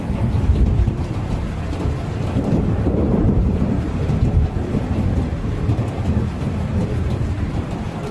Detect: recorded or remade remade